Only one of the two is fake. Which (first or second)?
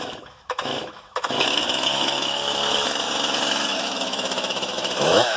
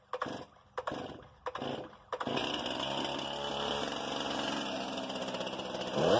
first